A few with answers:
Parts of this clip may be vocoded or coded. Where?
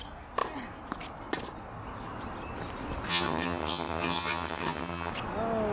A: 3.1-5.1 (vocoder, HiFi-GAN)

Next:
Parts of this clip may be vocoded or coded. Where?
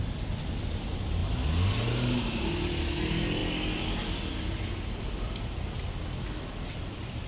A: none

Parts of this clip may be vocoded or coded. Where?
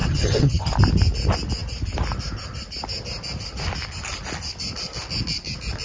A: 0.0-0.7 (vocoder, HiFi-GAN)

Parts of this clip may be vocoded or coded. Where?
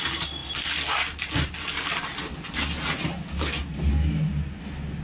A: none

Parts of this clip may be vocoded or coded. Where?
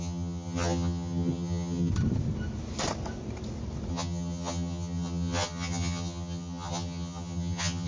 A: 0.0-1.9 (vocoder, HiFi-GAN); 3.9-7.9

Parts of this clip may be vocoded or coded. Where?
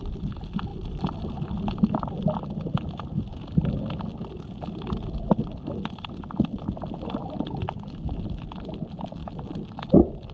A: none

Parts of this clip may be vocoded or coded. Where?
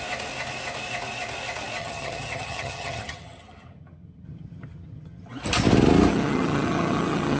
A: 1.8-5.3 (vocoder, HiFi-GAN); 6.1-7.4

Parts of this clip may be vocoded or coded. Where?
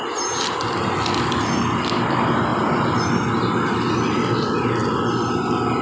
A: none